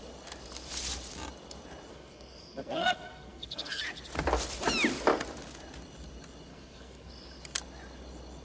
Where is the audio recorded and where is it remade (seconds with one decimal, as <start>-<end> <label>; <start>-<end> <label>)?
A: 0.0-1.9 recorded; 1.9-3.8 remade; 3.8-6.5 recorded; 6.5-7.1 remade; 7.1-8.4 recorded